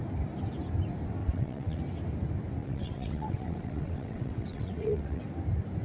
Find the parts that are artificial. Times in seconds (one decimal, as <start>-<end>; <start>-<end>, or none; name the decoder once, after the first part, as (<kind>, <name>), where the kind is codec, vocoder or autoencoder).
1.2-1.8 (vocoder, WaveNeXt); 2.6-5.2